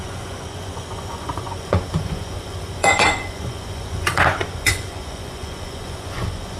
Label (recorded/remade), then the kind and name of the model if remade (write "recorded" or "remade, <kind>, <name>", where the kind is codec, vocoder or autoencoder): remade, vocoder, Vocos